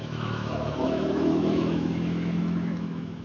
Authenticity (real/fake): fake